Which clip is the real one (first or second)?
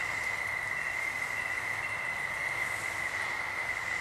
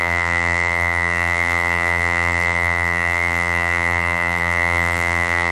first